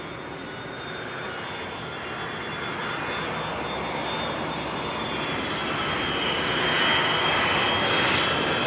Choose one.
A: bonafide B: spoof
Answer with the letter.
A